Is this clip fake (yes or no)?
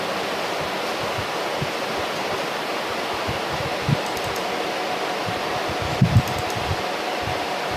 no